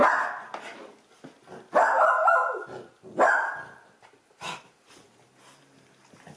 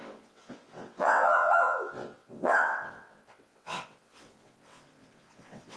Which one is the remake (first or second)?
second